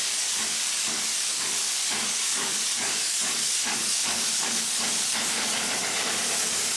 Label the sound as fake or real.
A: fake